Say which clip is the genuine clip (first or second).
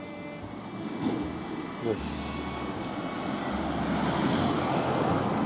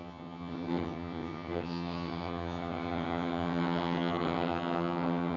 first